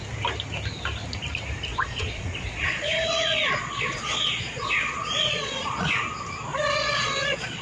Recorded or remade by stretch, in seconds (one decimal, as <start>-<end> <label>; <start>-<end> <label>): 0.0-1.7 recorded; 1.7-6.0 remade; 6.0-6.5 recorded; 6.5-7.6 remade